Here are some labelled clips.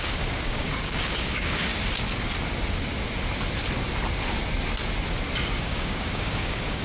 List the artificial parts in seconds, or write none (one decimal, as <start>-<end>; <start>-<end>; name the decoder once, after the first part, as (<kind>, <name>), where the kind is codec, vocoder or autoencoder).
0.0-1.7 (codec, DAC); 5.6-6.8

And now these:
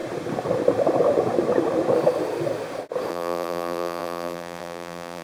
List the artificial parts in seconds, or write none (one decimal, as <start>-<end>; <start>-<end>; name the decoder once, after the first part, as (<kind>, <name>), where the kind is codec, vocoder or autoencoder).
3.1-5.2 (vocoder, BigVGAN v2)

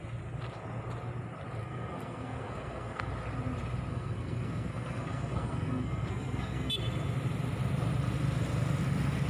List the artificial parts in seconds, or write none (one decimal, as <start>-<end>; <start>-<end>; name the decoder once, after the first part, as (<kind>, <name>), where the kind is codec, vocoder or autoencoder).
1.6-3.1 (codec, SNAC); 3.9-6.7